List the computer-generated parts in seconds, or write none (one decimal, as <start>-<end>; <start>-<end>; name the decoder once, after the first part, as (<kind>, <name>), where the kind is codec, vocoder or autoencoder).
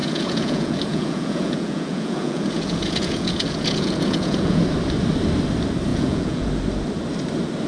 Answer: 0.0-4.6 (vocoder, Vocos); 5.9-6.5